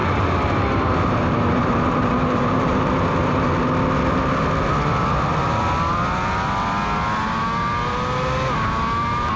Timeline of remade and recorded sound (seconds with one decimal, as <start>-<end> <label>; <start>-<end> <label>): 0.0-3.6 remade; 3.6-9.4 recorded